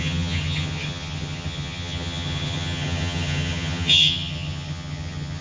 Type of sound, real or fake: fake